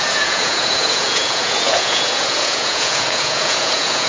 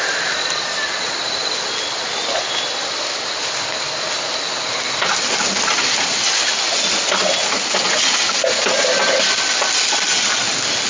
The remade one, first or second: first